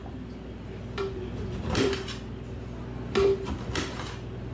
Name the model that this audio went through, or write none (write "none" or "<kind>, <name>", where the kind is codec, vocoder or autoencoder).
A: none